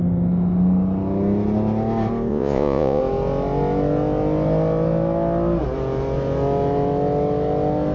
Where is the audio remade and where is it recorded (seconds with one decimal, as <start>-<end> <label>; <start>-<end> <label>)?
0.0-2.3 recorded; 2.3-3.0 remade; 3.0-7.9 recorded